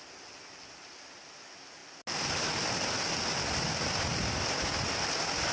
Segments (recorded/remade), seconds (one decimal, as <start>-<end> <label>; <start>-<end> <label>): 0.0-5.5 recorded